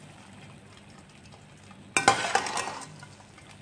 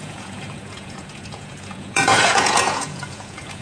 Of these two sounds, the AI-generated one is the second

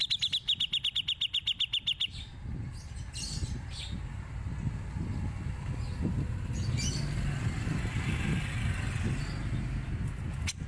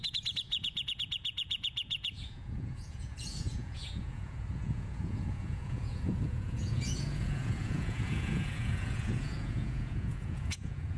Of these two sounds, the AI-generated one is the second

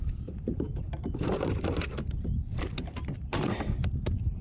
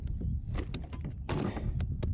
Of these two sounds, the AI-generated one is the first